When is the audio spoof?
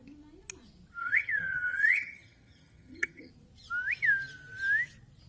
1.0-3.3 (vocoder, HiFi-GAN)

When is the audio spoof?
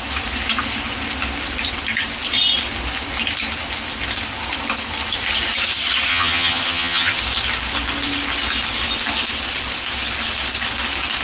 6.1-7.2 (vocoder, HiFi-GAN)